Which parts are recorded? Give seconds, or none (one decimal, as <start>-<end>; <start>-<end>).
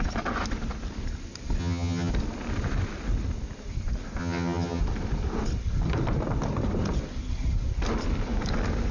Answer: 0.0-1.6; 2.1-4.2; 4.8-8.9